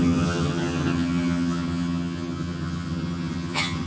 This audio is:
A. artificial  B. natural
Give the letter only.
A